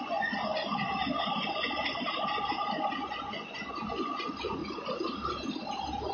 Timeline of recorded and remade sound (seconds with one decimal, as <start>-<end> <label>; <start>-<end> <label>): 0.0-0.5 remade; 0.5-3.0 recorded; 3.0-4.6 remade; 4.6-6.1 recorded